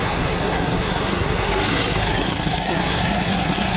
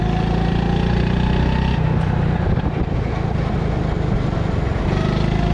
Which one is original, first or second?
second